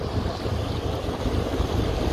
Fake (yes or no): yes